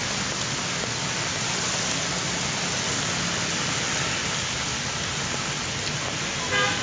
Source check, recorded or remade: recorded